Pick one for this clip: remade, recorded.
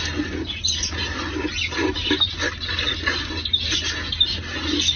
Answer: recorded